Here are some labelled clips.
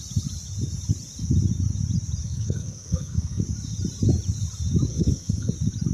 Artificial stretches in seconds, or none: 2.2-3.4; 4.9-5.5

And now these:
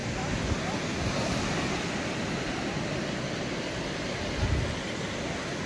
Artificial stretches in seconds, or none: none

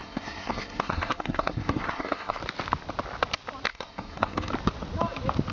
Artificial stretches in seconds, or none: 0.0-2.4; 3.7-4.5

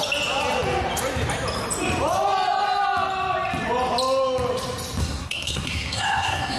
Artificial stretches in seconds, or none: 5.0-6.6

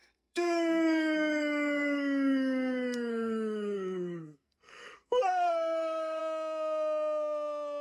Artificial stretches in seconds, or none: 0.0-6.2